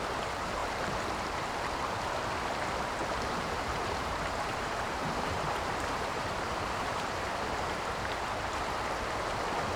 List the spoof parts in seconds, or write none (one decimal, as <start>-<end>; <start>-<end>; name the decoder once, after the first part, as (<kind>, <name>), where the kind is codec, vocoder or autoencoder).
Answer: 0.6-1.1 (vocoder, BigVGAN v2); 3.0-7.5